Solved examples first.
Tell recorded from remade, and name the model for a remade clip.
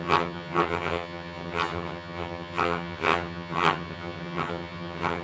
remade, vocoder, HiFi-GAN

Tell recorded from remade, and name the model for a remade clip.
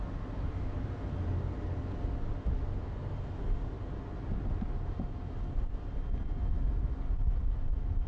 recorded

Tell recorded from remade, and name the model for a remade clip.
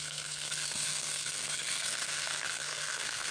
remade, codec, SNAC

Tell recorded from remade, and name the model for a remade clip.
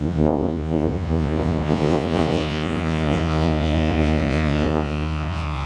remade, vocoder, Vocos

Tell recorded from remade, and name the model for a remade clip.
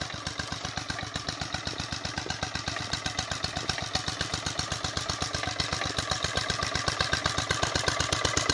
recorded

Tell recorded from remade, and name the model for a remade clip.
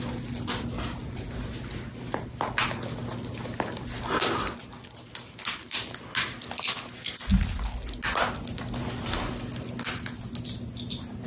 recorded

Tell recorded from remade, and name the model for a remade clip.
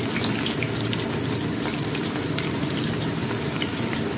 recorded